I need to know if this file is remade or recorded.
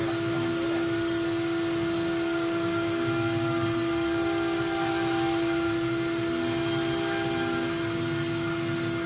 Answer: recorded